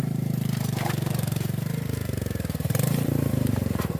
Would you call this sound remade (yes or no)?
yes